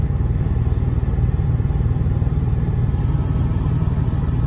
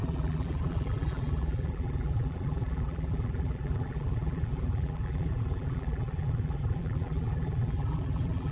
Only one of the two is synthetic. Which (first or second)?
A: second